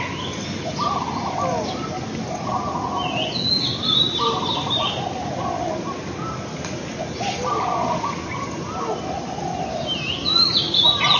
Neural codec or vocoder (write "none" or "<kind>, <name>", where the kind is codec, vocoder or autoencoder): none